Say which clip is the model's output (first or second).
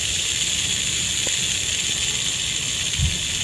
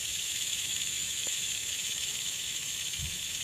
second